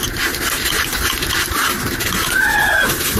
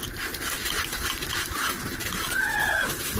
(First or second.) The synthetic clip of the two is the second